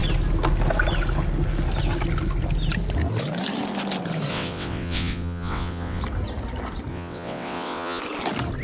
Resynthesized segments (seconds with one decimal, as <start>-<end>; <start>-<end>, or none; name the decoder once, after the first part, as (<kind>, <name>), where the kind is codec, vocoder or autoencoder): 4.3-6.0 (vocoder, WaveNeXt); 6.9-8.0